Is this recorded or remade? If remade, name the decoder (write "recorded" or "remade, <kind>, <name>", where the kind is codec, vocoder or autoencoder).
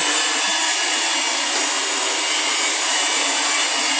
recorded